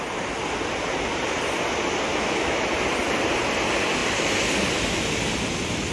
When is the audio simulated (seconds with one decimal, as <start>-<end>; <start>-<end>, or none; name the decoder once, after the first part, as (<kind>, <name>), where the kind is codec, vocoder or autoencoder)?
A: 2.1-2.6 (autoencoder, DAC-VAE)